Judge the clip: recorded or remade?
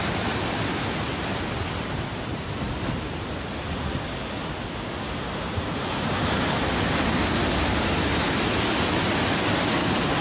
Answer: recorded